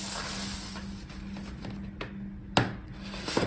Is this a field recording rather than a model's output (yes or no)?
yes